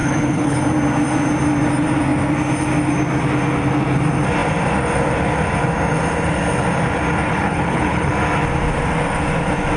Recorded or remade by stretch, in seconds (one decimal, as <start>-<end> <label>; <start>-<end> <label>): 0.0-0.6 remade; 0.6-7.3 recorded; 7.3-8.1 remade; 8.1-9.8 recorded